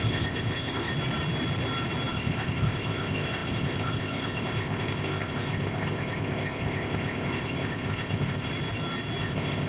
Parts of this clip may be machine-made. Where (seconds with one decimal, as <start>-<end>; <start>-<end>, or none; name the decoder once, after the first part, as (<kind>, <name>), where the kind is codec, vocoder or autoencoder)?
0.0-0.9 (codec, ZipCodec); 2.1-8.5; 9.2-9.7